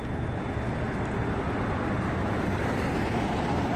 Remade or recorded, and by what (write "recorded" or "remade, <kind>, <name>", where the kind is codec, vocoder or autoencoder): recorded